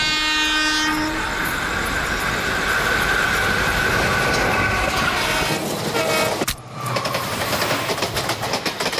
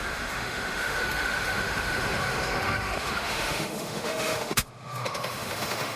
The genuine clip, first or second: first